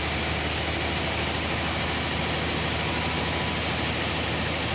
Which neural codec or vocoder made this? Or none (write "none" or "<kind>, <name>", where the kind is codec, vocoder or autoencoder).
none